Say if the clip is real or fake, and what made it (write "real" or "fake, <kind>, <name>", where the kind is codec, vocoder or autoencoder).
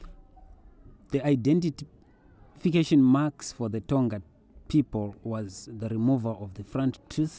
real